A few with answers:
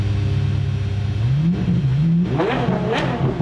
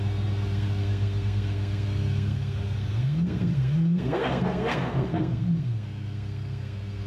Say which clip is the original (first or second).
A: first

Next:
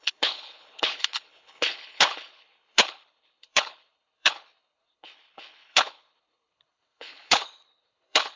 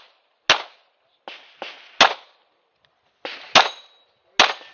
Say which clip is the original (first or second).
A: second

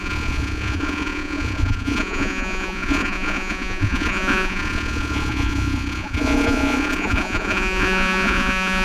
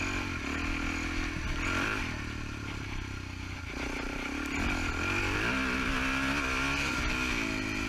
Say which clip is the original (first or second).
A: second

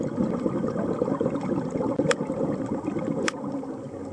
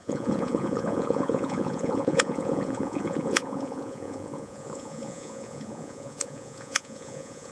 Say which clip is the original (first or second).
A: first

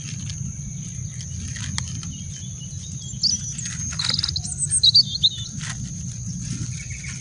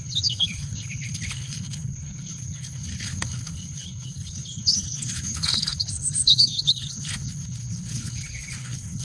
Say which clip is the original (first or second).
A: first